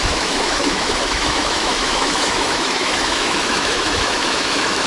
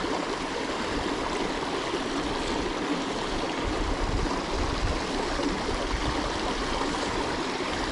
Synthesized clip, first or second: first